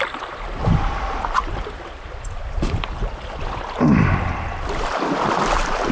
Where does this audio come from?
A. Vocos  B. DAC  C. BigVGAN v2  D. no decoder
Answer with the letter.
C